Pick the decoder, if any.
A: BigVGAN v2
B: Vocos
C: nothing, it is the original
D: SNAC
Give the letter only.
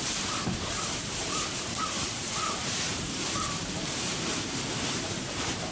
A